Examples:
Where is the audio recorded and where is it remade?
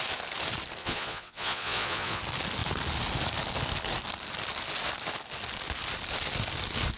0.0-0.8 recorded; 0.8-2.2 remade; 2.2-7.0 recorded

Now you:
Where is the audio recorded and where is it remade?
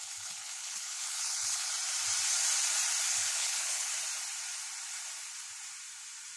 0.0-1.7 remade; 1.7-3.1 recorded; 3.1-3.9 remade; 3.9-6.4 recorded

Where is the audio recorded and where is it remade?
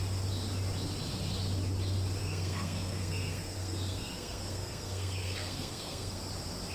0.0-2.2 recorded; 2.2-6.2 remade; 6.2-6.7 recorded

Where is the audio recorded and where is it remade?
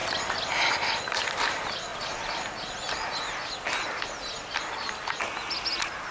0.0-6.1 recorded